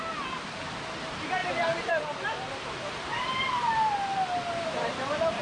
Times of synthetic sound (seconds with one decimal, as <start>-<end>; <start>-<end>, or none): 1.4-1.9